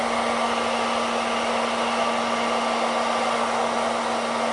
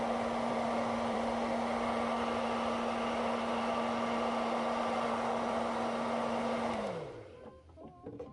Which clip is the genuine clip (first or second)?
first